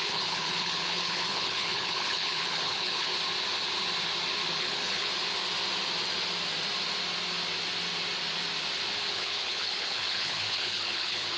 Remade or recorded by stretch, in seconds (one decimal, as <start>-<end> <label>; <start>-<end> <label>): 0.0-3.1 remade; 3.1-4.6 recorded; 4.6-5.1 remade; 5.1-9.1 recorded; 9.1-11.4 remade